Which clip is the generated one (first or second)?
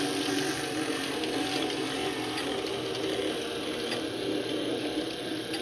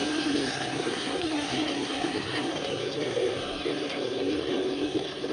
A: second